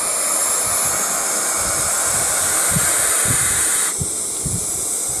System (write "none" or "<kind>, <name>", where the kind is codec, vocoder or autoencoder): none